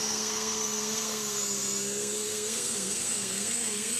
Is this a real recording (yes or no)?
no